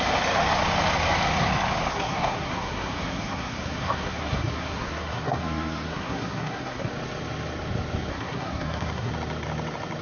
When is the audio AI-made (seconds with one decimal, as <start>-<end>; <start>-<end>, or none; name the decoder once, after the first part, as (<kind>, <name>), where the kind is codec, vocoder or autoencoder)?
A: 1.9-6.9 (codec, SNAC); 8.1-9.1